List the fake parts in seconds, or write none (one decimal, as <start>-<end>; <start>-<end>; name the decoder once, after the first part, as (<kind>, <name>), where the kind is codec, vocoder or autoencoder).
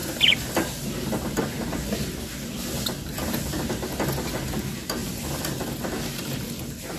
none